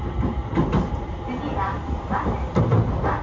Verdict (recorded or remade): recorded